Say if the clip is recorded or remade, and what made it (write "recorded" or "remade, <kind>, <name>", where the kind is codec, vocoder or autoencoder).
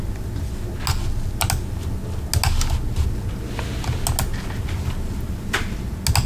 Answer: recorded